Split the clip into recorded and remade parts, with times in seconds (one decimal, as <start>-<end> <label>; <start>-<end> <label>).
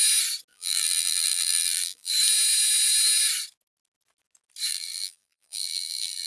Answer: 0.0-0.5 recorded; 0.5-2.1 remade; 2.1-4.7 recorded; 4.7-6.3 remade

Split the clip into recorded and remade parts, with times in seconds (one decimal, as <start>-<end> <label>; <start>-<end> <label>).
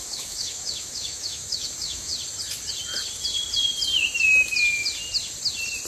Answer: 0.0-2.1 remade; 2.1-5.9 recorded